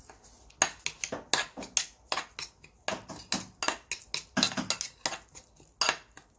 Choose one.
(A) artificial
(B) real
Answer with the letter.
B